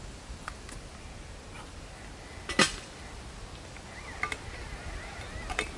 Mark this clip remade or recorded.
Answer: recorded